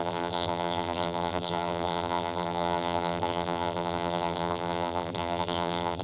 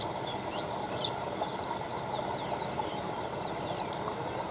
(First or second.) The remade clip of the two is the first